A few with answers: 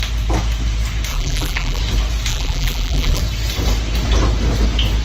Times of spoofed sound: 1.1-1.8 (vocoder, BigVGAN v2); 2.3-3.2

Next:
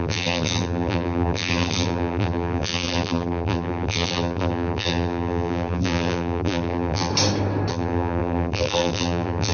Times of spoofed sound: 0.0-7.1 (vocoder, BigVGAN v2); 7.7-9.5

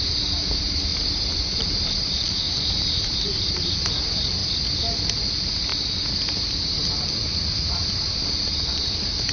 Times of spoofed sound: 0.0-4.4 (vocoder, BigVGAN v2); 5.3-9.3

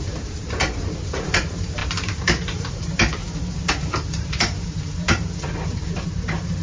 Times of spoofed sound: 0.0-3.2 (vocoder, BigVGAN v2); 3.7-6.6

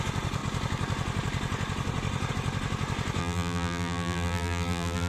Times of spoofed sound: 3.2-5.1 (vocoder, BigVGAN v2)

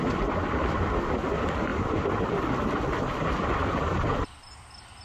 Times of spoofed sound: none